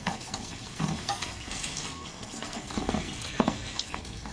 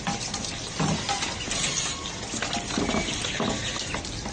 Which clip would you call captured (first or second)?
second